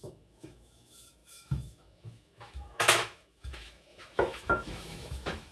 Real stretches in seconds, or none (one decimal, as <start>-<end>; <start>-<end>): none